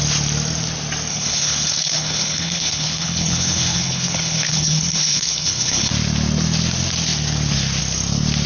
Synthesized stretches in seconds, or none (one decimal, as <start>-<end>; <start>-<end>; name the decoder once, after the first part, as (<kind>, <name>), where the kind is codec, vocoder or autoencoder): 1.1-5.9 (codec, HILCodec)